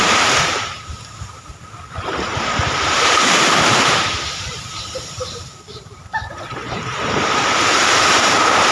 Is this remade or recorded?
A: remade